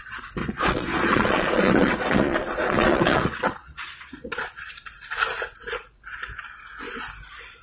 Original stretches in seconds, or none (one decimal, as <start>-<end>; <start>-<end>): 0.0-0.4; 4.7-7.6